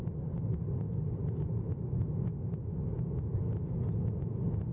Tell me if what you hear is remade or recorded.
recorded